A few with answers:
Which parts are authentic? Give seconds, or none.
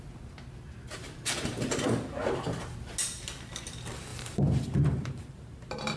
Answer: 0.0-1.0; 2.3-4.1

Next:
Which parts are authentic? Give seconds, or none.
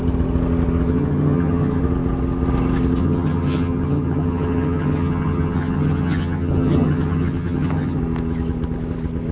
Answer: 0.0-0.9; 1.8-3.0; 8.0-9.3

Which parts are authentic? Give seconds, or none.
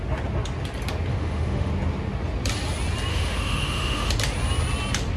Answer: 0.0-1.1; 1.7-3.1; 4.1-5.2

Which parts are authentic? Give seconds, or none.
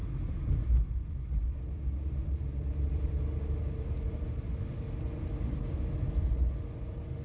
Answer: 0.0-7.2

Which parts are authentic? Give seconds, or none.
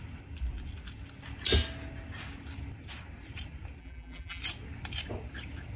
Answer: 0.0-3.8; 4.4-5.8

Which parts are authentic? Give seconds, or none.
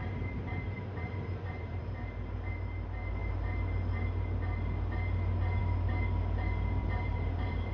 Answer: 1.8-6.8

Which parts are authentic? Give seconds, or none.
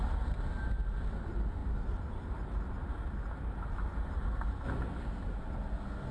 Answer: 0.0-6.1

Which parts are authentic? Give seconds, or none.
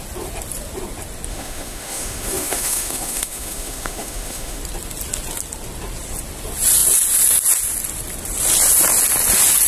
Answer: 0.0-1.3; 4.6-9.7